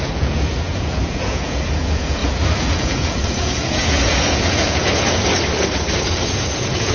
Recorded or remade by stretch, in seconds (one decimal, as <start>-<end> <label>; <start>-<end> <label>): 0.0-5.3 remade; 5.3-6.0 recorded; 6.0-6.9 remade

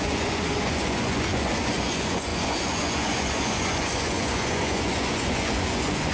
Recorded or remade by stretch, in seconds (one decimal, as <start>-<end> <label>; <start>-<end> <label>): 0.0-6.1 remade

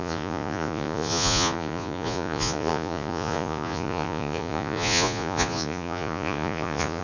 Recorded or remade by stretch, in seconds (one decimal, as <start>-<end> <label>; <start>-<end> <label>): 0.0-7.0 remade